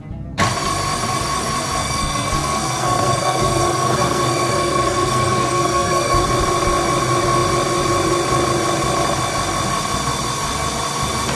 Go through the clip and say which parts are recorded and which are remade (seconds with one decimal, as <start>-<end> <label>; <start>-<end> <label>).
0.0-1.8 recorded; 1.8-6.3 remade; 6.3-11.3 recorded